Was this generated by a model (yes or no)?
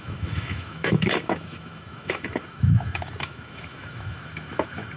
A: yes